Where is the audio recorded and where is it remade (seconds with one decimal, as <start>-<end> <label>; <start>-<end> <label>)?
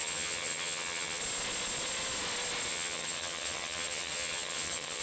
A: 0.0-1.2 remade; 1.2-2.7 recorded; 2.7-5.0 remade